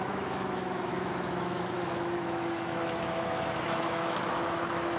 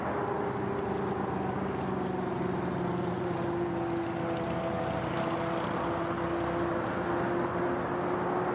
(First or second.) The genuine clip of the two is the second